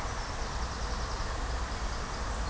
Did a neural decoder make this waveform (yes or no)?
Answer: no